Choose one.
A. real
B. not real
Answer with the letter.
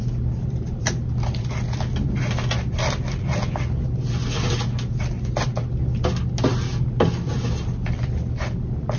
A